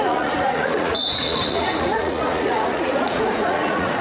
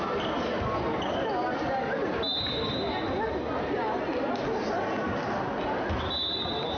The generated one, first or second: first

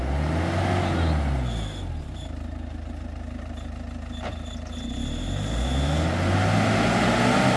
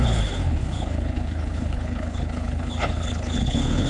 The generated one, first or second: second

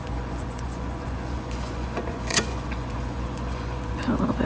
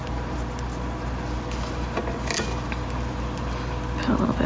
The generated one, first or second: first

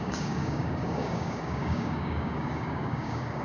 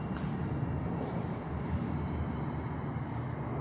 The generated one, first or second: first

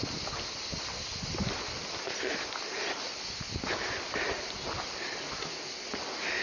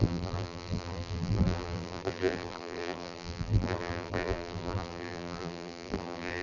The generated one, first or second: second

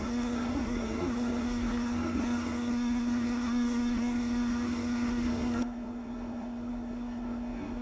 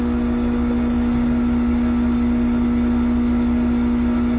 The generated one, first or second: first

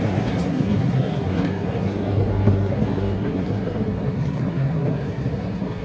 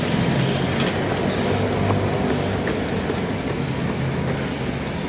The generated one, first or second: first